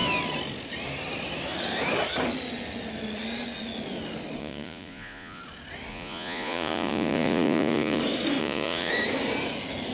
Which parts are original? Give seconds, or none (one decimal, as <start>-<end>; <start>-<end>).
0.0-4.4; 5.4-5.9; 8.0-8.4; 8.9-9.9